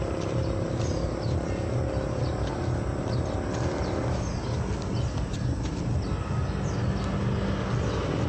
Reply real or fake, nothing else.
real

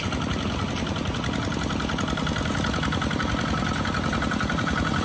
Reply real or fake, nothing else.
real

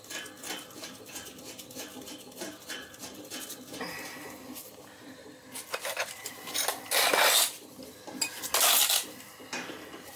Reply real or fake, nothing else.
real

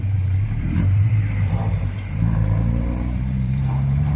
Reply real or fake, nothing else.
fake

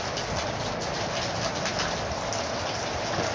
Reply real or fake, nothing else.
real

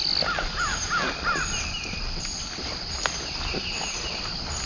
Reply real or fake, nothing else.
real